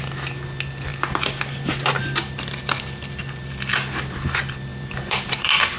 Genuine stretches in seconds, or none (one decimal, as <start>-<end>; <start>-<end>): 0.0-0.9; 3.7-4.7

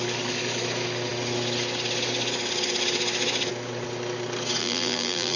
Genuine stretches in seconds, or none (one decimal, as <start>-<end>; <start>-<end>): 0.0-4.6

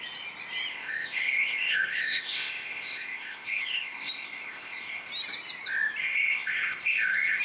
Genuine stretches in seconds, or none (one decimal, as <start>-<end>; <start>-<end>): 0.0-0.7; 5.1-6.0

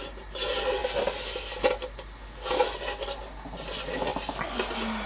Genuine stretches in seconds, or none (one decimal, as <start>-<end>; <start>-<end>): 0.0-5.1

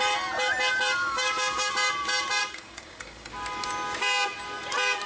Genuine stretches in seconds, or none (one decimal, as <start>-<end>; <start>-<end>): 0.0-1.0; 1.7-2.4; 3.3-5.1

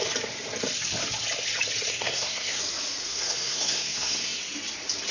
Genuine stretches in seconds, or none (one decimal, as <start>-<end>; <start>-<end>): 0.0-1.9; 2.6-3.0; 4.4-5.1

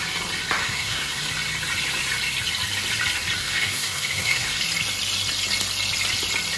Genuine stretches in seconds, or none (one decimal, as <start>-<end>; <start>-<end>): 0.0-0.6; 1.2-3.4; 4.6-6.6